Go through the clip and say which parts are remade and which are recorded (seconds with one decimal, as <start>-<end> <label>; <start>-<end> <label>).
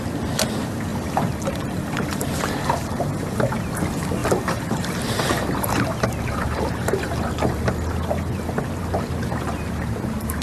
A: 0.0-0.9 recorded; 0.9-3.5 remade; 3.5-4.2 recorded; 4.2-8.6 remade; 8.6-10.4 recorded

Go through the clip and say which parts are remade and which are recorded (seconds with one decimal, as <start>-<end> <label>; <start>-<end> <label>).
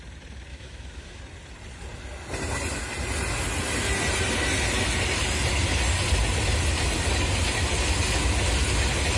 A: 0.0-0.5 recorded; 0.5-1.2 remade; 1.2-9.2 recorded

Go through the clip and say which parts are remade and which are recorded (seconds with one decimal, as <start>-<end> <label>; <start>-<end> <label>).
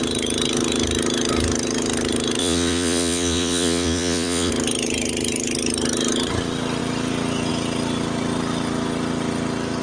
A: 0.0-2.4 recorded; 2.4-4.5 remade; 4.5-9.8 recorded